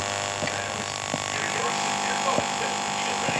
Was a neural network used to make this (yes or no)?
no